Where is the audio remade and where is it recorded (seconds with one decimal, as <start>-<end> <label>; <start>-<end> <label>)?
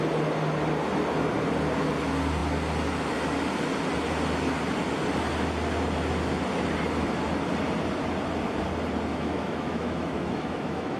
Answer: 0.0-9.1 recorded; 9.1-11.0 remade